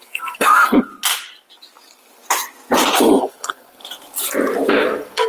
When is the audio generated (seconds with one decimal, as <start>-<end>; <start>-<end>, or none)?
0.0-0.9; 3.2-3.8; 4.7-5.3